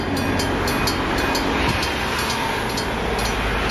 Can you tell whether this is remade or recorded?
recorded